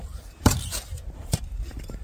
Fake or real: fake